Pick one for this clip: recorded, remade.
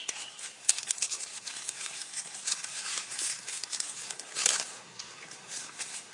remade